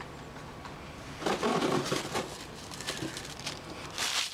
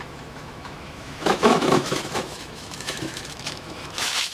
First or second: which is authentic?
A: first